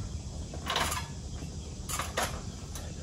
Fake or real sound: real